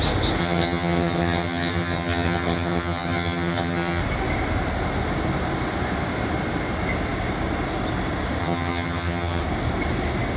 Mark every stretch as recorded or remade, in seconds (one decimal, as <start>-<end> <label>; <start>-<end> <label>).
0.0-0.4 recorded; 0.4-4.0 remade; 4.0-8.4 recorded; 8.4-9.4 remade; 9.4-10.4 recorded